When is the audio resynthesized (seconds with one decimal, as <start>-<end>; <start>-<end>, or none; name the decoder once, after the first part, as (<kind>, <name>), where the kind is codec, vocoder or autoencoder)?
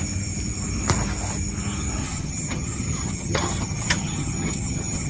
2.0-5.1 (vocoder, HiFi-GAN)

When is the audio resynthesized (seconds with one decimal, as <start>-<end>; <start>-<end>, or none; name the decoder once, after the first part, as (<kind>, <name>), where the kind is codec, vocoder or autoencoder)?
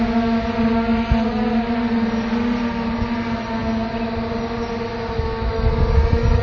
none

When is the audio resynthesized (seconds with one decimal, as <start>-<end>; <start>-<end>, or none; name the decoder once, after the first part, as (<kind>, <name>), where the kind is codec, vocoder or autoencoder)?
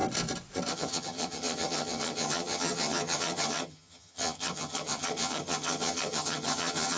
0.7-7.0 (vocoder, HiFi-GAN)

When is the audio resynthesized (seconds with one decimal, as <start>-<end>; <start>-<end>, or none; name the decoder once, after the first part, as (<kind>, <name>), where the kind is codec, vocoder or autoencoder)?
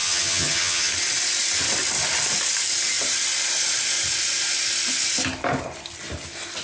0.0-0.9 (vocoder, HiFi-GAN)